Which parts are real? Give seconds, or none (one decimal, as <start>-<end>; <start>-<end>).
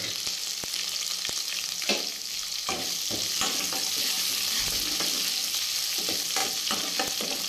0.0-7.5